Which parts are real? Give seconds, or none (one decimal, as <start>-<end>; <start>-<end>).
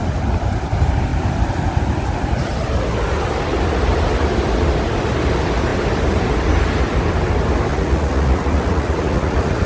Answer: 0.0-7.7